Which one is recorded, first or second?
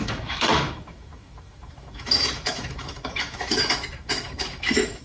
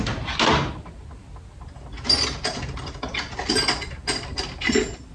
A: second